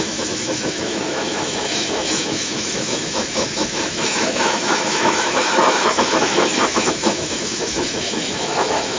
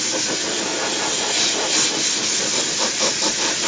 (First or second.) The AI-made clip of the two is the first